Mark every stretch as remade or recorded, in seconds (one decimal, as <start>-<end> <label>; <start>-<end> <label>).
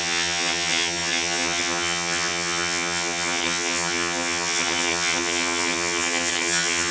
0.0-6.9 remade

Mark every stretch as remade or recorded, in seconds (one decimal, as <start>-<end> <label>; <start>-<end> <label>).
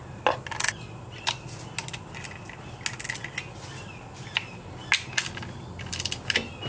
0.0-6.7 recorded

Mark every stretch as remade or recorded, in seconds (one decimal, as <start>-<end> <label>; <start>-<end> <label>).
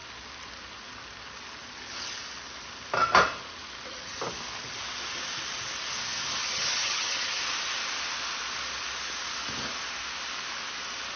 0.0-6.4 recorded; 6.4-7.4 remade; 7.4-11.2 recorded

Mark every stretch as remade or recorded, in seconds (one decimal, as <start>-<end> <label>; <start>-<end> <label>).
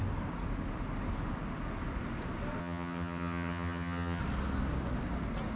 0.0-2.6 recorded; 2.6-4.2 remade; 4.2-5.6 recorded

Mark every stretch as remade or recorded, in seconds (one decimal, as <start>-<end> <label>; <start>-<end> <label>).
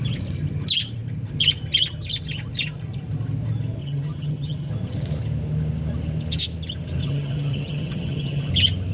0.0-3.8 recorded; 3.8-4.7 remade; 4.7-7.0 recorded; 7.0-8.5 remade; 8.5-8.9 recorded